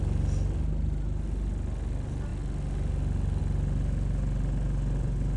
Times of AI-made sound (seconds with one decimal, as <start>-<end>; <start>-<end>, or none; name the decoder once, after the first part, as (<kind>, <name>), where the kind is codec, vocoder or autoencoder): none

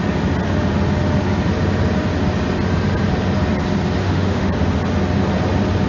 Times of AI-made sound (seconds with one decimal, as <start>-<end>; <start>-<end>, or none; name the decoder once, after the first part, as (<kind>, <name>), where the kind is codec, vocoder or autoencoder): 4.0-4.5 (autoencoder, DAC-VAE)

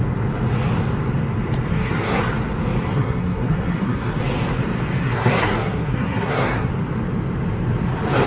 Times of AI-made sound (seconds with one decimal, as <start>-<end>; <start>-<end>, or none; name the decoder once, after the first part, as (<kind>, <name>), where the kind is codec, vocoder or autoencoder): 1.7-2.2 (codec, SNAC); 2.9-4.2; 5.0-6.7

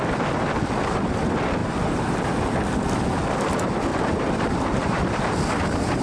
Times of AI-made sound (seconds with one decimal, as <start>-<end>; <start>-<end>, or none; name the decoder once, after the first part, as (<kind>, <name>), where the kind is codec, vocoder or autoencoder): 1.6-2.7 (vocoder, BigVGAN v2); 3.9-5.1